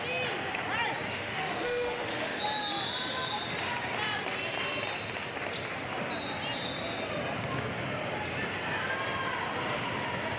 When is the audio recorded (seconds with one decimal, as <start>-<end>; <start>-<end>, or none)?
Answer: 0.0-1.1; 2.4-10.4